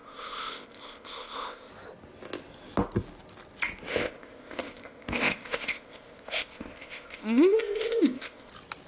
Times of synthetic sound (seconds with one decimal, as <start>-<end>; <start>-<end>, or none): 0.0-1.7; 3.9-8.5